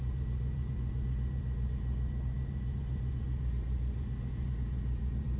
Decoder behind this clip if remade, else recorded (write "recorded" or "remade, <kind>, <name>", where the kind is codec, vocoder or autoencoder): remade, vocoder, BigVGAN v2